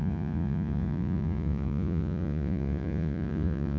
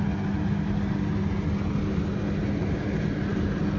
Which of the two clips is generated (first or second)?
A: first